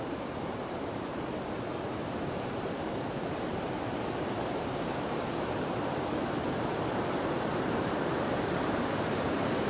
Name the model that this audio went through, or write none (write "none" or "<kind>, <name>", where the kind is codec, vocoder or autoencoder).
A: vocoder, BigVGAN v2